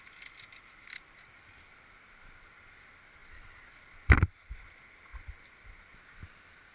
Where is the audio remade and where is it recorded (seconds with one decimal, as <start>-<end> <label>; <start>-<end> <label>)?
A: 0.0-6.7 recorded